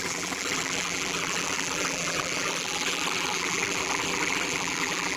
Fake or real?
fake